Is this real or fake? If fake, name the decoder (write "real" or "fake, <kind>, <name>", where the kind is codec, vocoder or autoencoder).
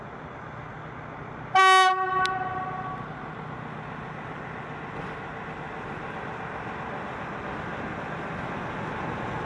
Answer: real